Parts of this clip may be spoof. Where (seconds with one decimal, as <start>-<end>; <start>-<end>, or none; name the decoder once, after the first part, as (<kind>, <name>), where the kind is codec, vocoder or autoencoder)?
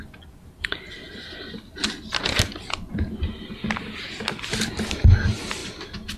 none